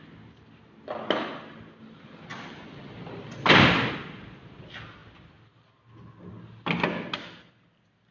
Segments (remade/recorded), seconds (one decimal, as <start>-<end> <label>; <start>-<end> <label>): 0.0-8.1 recorded